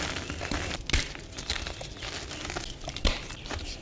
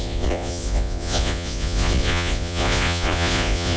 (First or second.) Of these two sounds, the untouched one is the first